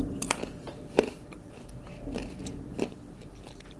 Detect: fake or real fake